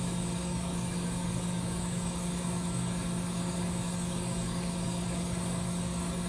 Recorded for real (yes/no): no